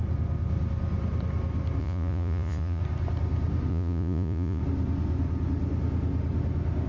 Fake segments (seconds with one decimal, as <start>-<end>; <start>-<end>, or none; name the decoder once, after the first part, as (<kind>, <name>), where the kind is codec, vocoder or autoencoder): 1.8-2.8 (vocoder, Vocos); 3.7-4.6